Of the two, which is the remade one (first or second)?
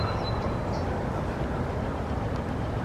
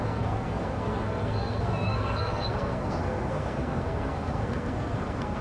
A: second